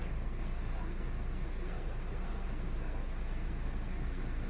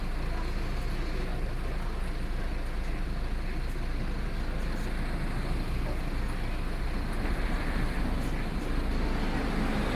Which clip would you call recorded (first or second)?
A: second